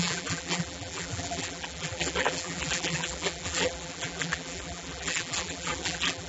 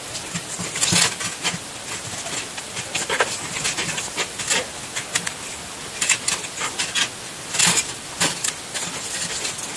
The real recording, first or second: second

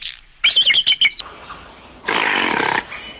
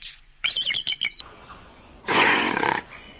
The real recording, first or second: first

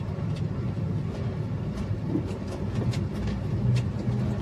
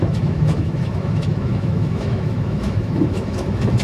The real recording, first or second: first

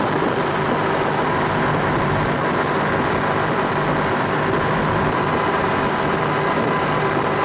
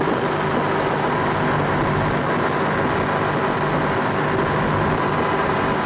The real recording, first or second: second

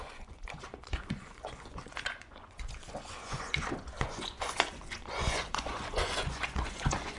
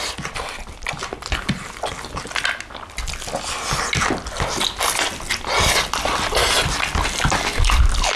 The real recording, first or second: second